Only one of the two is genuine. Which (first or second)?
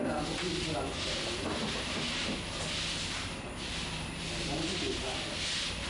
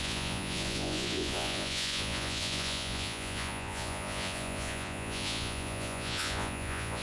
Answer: first